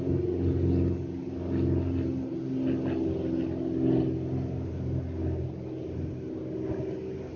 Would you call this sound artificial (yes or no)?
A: no